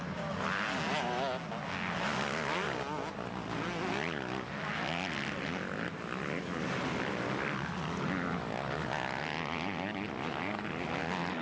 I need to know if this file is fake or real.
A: real